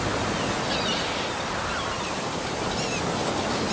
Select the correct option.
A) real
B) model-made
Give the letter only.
A